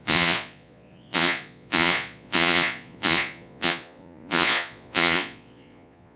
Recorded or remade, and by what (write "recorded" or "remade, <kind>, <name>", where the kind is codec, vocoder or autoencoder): remade, vocoder, Vocos